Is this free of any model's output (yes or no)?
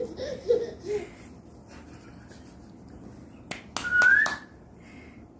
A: yes